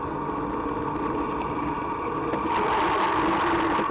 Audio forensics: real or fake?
real